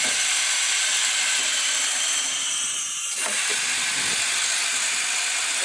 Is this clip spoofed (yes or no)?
yes